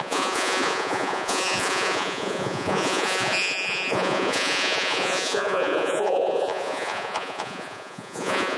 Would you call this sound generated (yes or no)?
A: yes